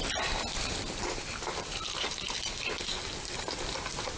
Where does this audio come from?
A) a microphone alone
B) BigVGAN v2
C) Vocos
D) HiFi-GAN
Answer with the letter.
B